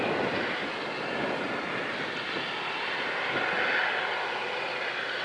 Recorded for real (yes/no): yes